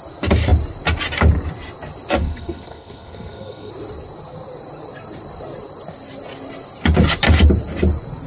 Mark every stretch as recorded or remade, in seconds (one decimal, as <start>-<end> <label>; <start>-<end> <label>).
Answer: 0.0-2.2 recorded; 2.2-3.7 remade; 3.7-8.3 recorded